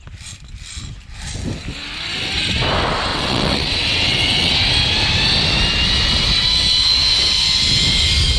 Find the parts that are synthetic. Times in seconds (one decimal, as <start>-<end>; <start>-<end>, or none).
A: 3.1-4.5